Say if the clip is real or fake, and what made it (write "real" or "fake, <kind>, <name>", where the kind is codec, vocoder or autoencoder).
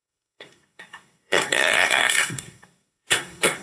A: fake, codec, SNAC